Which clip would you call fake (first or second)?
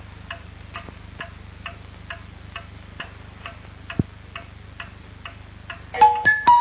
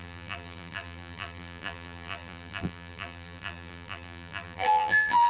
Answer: second